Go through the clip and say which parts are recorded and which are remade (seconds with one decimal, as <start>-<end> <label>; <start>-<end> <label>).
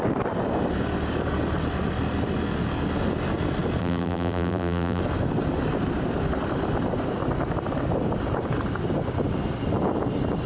0.0-3.8 recorded; 3.8-5.0 remade; 5.0-10.5 recorded